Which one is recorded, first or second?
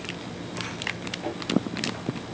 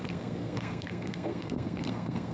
first